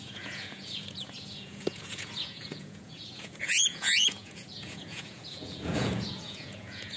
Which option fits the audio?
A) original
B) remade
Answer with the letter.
B